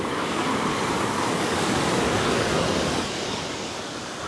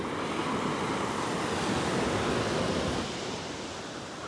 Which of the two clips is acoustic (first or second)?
second